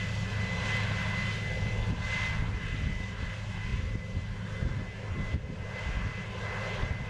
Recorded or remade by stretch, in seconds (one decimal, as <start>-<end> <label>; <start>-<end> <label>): 0.0-7.1 recorded